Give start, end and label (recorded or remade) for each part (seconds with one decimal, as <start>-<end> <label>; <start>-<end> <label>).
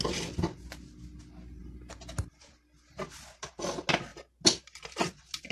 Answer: 0.0-5.5 recorded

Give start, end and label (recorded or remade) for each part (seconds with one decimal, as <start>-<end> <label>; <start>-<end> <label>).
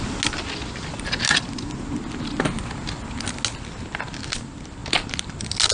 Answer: 0.0-5.7 recorded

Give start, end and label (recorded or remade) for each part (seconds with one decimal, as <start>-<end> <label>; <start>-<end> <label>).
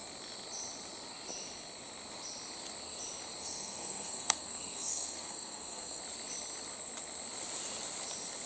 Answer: 0.0-3.4 recorded; 3.4-6.0 remade; 6.0-8.5 recorded